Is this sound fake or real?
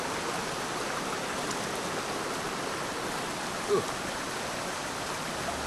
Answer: real